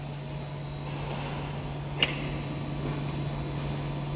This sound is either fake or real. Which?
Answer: real